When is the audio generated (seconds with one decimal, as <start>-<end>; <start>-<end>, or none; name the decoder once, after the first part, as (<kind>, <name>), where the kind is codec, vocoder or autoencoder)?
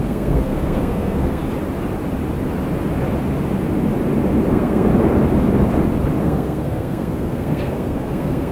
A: 0.0-1.4 (codec, SNAC); 4.5-4.9; 6.2-8.5